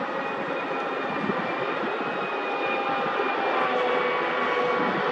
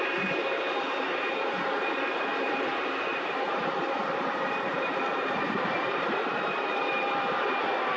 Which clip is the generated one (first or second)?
second